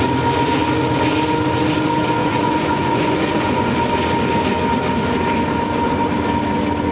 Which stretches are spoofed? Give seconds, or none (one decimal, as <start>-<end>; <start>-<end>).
2.2-3.7